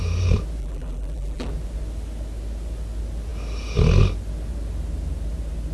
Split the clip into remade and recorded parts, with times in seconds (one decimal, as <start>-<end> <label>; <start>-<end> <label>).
0.0-0.6 recorded; 0.6-1.5 remade; 1.5-5.7 recorded